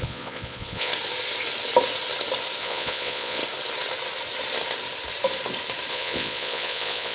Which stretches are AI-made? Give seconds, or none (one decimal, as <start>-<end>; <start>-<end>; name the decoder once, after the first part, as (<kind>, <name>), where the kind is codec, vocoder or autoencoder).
0.0-0.9 (vocoder, Vocos); 2.6-3.4; 5.9-7.1